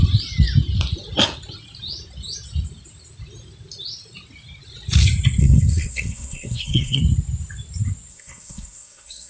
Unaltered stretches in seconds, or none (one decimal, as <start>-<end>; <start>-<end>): 0.0-5.4; 7.0-8.1